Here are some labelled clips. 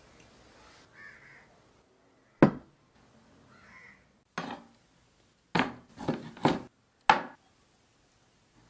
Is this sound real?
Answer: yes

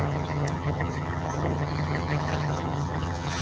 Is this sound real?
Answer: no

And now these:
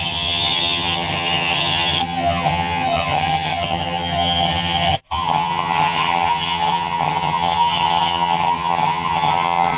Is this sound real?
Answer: no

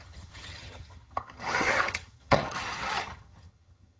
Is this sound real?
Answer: no